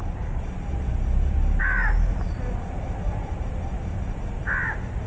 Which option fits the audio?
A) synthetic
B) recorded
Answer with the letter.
B